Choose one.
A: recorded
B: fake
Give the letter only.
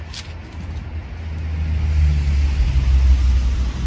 A